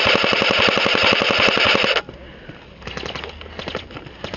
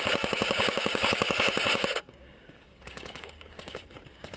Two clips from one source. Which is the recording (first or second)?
first